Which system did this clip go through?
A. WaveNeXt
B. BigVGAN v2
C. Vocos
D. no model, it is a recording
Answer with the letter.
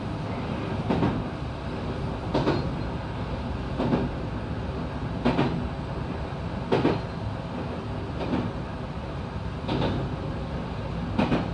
D